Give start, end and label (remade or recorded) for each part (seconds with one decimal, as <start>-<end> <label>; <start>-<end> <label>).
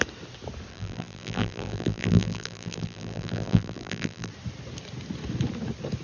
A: 0.0-0.7 recorded; 0.7-4.3 remade; 4.3-6.0 recorded